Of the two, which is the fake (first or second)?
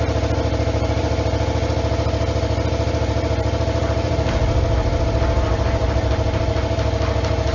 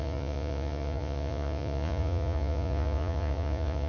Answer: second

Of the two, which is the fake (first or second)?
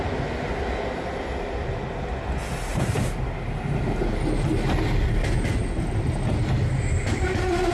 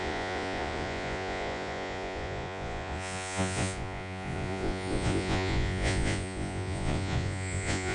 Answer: second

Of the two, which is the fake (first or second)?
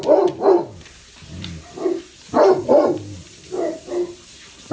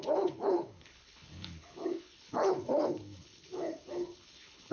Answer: second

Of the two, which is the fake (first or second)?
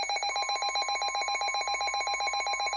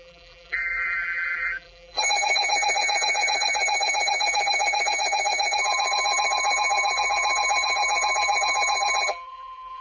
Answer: second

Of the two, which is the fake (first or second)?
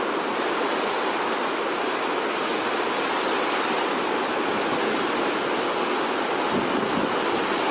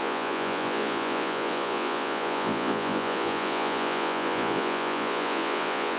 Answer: second